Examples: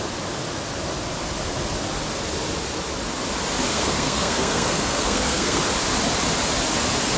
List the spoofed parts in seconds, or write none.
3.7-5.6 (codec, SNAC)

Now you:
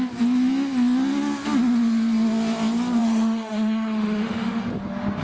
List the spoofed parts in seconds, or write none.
3.0-4.7 (autoencoder, DAC-VAE)

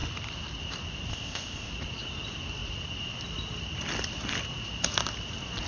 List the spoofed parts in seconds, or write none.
1.1-1.7 (codec, ZipCodec)

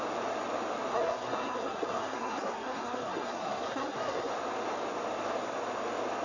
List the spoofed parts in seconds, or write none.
0.9-4.3 (codec, SNAC)

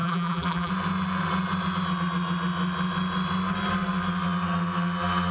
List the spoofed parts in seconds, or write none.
0.0-0.7 (vocoder, BigVGAN v2)

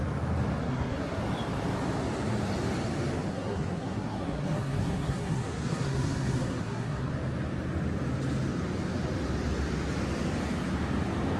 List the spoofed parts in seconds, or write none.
0.6-1.2 (codec, SNAC); 3.3-7.1

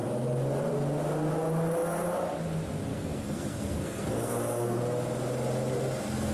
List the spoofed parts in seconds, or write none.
2.9-4.8 (codec, SNAC)